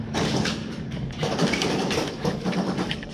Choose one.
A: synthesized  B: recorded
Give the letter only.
A